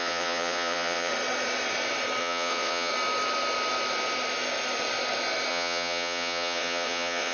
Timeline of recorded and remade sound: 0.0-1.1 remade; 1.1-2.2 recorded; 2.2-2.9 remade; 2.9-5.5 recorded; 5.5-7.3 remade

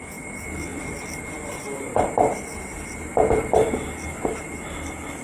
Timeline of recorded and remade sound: 0.0-5.2 recorded

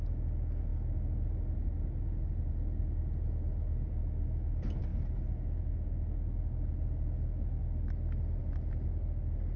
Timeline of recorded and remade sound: 0.0-9.6 recorded

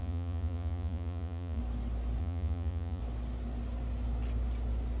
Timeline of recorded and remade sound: 0.0-1.6 remade; 1.6-2.2 recorded; 2.2-3.0 remade; 3.0-5.0 recorded

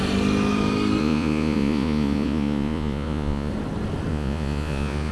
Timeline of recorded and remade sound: 0.0-1.0 recorded; 1.0-3.5 remade; 3.5-4.1 recorded; 4.1-5.1 remade

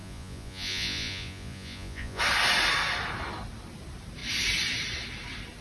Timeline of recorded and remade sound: 0.0-2.2 remade; 2.2-5.6 recorded